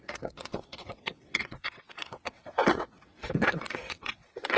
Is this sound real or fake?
fake